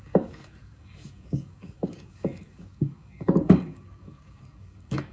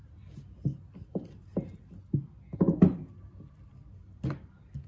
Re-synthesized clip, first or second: first